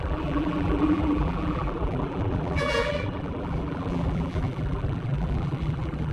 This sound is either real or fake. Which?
fake